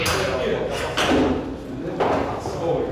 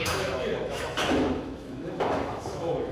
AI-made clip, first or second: second